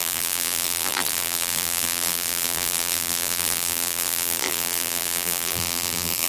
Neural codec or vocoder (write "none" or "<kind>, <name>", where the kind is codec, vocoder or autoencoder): vocoder, BigVGAN v2